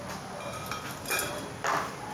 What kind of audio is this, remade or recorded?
recorded